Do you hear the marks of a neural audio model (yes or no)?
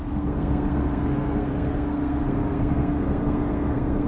yes